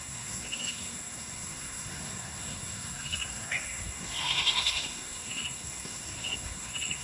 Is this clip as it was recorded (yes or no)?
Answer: no